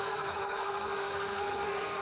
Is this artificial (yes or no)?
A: yes